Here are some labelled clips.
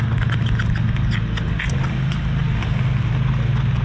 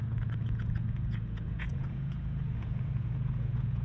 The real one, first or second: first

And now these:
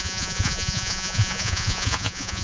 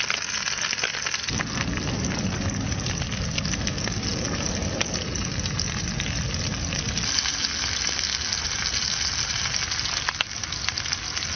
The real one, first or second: second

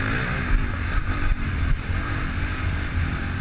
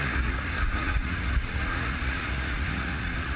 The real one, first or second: first